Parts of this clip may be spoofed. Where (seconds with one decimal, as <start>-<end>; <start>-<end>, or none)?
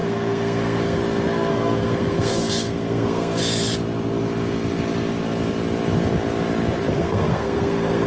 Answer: 0.0-1.0; 1.5-3.4; 6.9-8.1